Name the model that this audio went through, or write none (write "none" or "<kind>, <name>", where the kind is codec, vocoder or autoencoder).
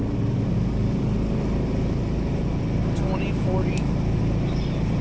none